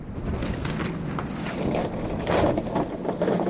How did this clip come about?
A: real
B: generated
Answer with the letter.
A